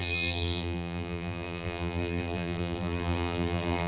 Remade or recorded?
remade